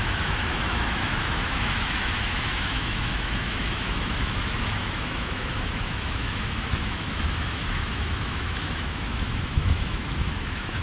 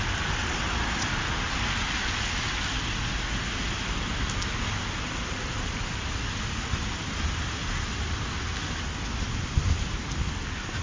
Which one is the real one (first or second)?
second